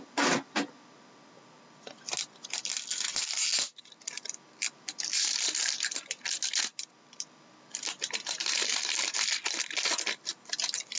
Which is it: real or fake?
real